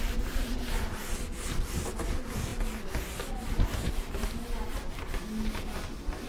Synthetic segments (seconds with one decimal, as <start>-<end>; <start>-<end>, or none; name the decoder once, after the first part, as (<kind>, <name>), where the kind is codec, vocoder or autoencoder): none